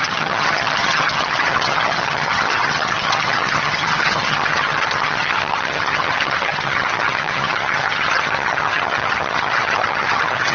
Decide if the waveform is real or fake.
fake